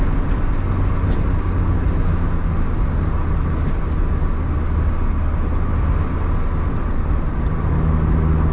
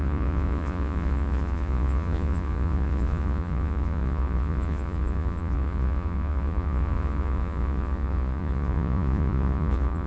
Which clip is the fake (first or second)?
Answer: second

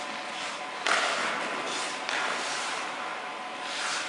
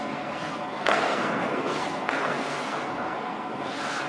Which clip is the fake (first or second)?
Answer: second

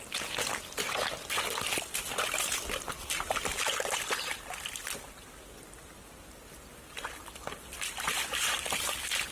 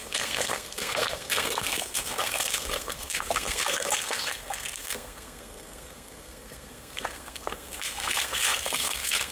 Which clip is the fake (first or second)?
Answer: second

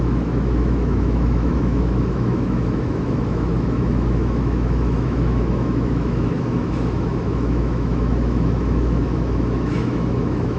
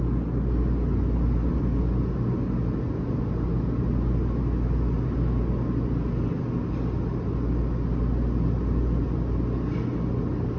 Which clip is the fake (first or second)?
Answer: first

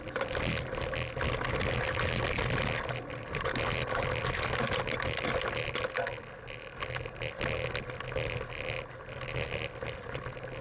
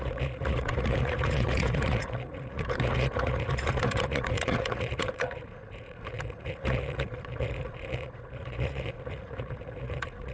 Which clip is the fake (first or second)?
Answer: second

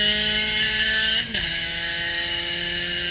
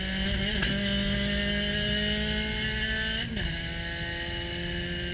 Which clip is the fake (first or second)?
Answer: first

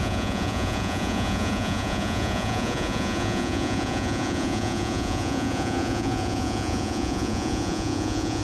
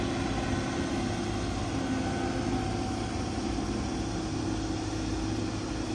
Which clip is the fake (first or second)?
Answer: first